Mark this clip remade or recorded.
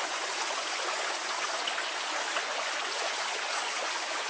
remade